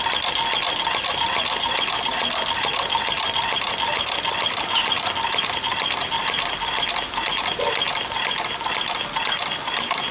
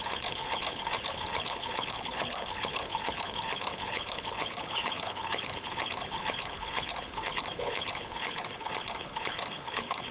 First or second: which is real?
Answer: first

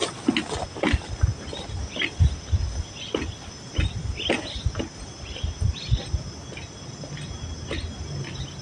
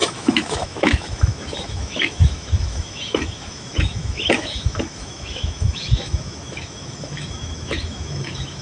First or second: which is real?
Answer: first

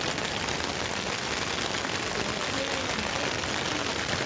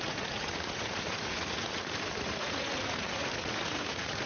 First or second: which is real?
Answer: first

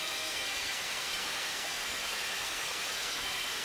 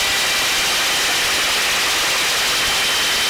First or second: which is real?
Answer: second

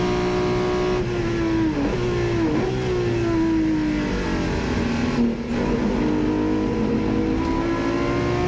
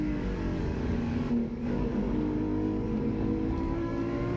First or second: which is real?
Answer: first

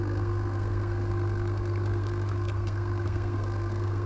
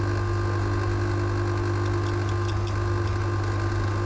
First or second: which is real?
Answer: second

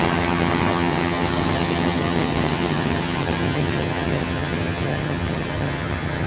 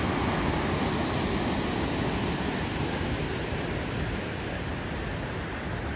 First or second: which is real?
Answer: second